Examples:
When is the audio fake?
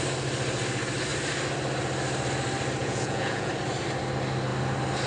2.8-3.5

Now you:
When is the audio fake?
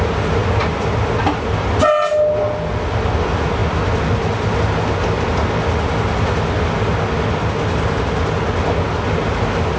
none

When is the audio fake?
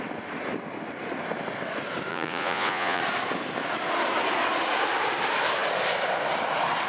2.1-3.0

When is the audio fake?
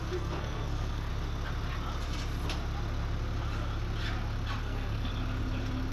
0.0-1.1; 4.6-5.1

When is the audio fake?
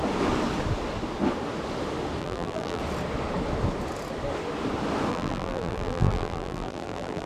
2.2-2.8; 5.1-7.3